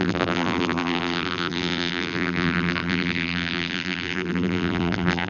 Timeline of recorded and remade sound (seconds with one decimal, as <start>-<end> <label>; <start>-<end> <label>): 0.0-5.3 remade